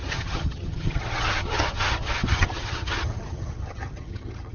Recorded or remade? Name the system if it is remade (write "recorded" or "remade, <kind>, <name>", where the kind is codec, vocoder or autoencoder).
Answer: remade, vocoder, HiFi-GAN